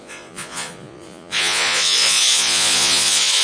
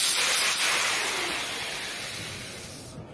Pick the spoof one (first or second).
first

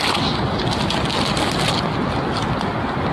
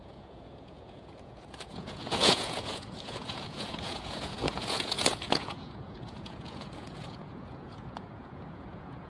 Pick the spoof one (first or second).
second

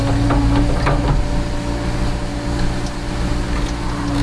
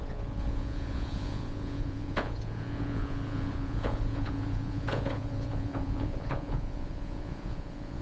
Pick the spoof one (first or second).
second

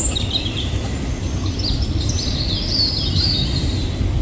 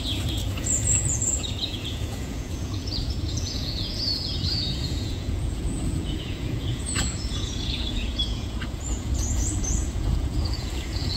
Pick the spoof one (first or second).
second